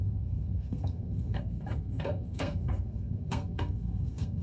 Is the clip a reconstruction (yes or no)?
yes